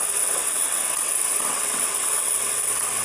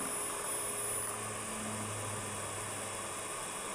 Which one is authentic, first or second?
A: second